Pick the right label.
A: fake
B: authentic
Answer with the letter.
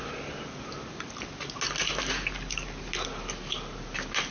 B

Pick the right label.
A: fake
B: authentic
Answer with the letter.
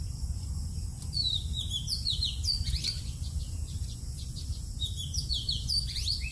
A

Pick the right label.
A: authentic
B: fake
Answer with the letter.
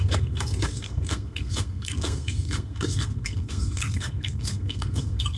B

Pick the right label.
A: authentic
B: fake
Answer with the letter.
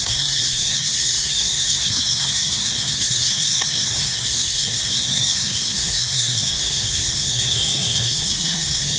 B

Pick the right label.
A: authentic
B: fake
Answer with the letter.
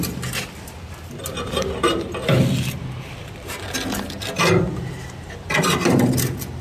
A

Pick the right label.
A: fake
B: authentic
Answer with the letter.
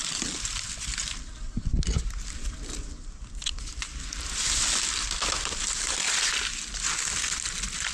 B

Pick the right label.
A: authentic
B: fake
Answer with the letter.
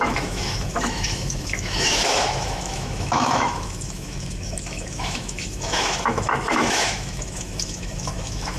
B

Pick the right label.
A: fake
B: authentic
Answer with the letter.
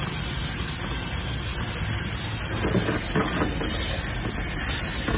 B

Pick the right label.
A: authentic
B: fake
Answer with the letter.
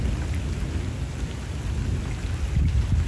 A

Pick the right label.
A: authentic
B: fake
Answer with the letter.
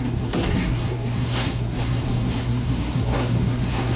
B